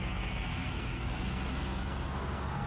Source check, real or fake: fake